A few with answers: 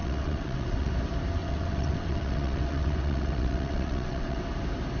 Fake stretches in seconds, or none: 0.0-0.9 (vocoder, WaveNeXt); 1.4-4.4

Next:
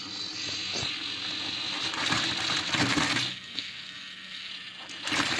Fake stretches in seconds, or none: 3.3-4.5 (codec, SNAC)

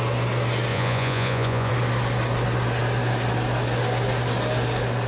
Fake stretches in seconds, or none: 0.7-1.7 (vocoder, Vocos)

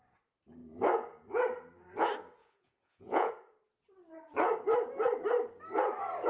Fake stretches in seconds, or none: 2.4-3.3 (vocoder, Vocos)